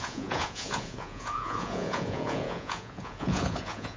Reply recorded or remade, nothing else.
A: remade